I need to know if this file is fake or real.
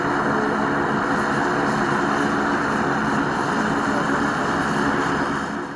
real